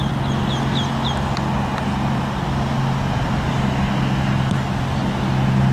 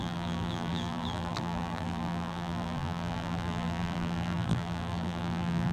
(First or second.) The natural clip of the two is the first